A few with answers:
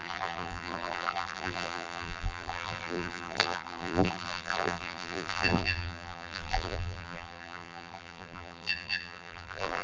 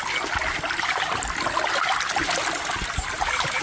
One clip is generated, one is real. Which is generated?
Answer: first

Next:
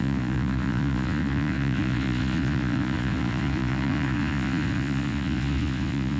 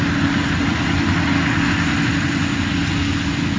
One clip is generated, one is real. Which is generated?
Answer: first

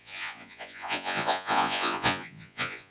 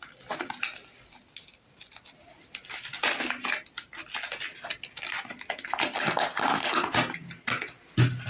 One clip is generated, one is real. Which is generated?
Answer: first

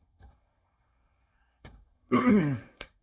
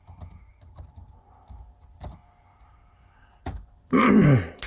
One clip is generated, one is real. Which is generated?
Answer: first